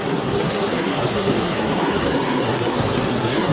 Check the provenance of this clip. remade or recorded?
remade